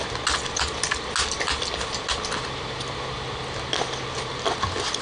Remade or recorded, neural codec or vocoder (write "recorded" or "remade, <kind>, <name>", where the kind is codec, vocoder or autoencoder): recorded